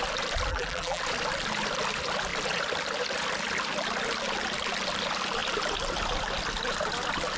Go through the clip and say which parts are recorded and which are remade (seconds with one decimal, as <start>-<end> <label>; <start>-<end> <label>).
0.0-0.5 recorded; 0.5-1.0 remade; 1.0-7.4 recorded